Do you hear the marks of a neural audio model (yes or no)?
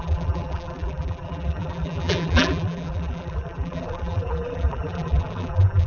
yes